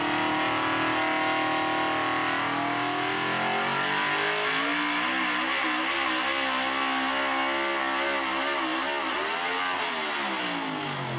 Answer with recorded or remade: recorded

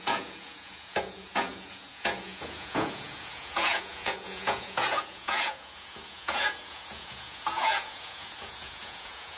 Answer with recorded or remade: remade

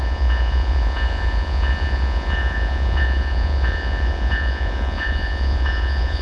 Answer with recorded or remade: remade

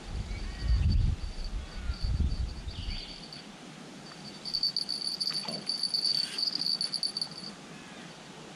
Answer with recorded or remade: recorded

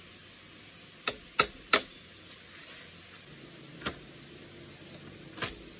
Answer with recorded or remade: recorded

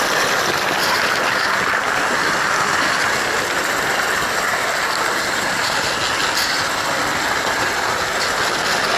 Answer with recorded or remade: recorded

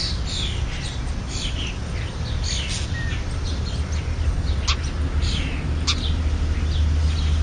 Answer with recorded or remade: recorded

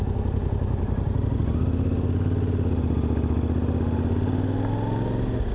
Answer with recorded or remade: recorded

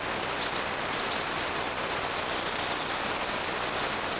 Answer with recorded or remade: recorded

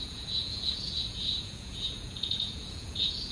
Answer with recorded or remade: remade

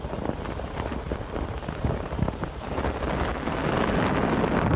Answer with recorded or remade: recorded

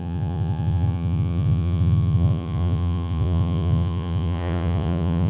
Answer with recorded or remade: remade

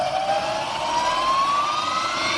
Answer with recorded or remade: recorded